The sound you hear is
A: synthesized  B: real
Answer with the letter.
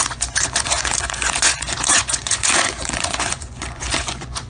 A